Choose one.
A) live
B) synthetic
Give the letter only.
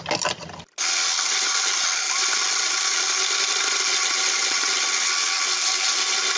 A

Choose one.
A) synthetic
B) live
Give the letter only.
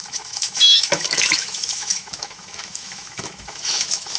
A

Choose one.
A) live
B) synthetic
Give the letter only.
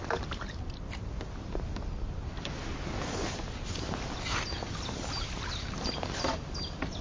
A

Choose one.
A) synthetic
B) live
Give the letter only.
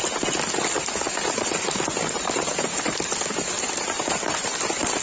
B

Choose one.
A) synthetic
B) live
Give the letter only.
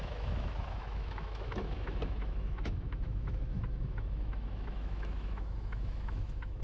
A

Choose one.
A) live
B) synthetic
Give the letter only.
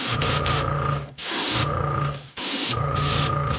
B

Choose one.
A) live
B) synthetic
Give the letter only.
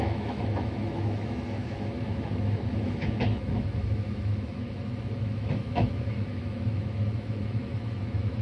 B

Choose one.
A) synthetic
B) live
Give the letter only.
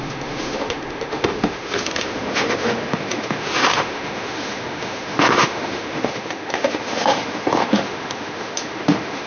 A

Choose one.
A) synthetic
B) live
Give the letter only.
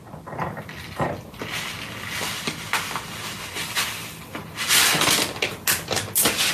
B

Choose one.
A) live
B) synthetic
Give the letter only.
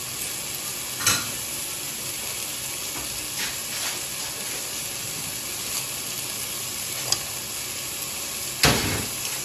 A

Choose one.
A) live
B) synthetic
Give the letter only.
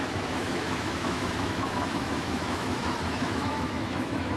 B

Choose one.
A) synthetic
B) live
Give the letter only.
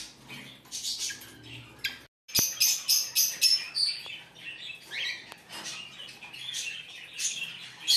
B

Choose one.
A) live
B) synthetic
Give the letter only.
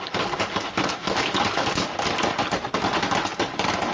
A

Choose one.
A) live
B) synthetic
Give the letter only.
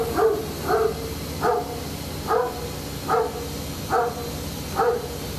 A